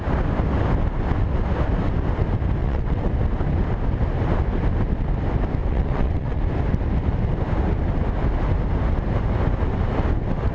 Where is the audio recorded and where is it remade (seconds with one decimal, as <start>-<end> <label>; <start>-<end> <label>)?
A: 0.0-2.6 recorded; 2.6-3.1 remade; 3.1-5.6 recorded; 5.6-6.4 remade; 6.4-10.5 recorded